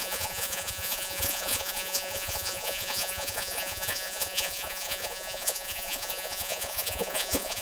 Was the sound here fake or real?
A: fake